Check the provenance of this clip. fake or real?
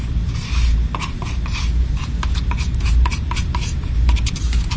fake